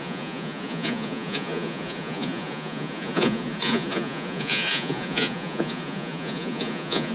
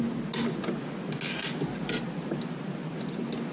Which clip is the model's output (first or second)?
first